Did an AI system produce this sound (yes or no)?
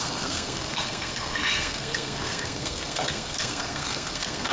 yes